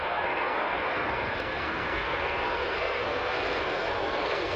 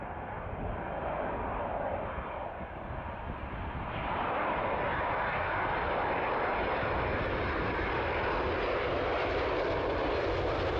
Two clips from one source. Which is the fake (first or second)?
first